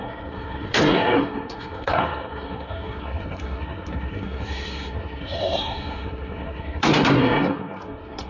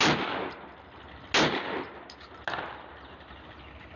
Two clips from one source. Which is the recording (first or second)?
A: second